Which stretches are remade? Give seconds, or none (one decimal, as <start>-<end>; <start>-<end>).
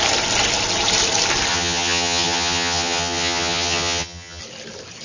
1.5-4.4